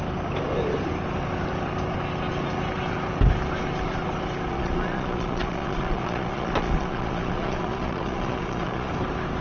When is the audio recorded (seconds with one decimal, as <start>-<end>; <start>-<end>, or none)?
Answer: 0.0-4.5; 8.9-9.4